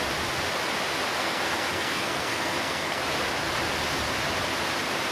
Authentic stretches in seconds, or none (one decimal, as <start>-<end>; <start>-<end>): 0.0-1.2; 3.0-5.1